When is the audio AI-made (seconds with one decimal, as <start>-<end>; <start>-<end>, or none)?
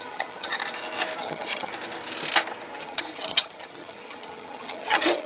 0.0-0.6; 1.2-1.7; 2.8-5.3